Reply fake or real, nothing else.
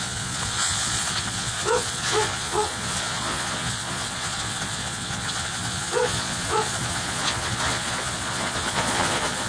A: fake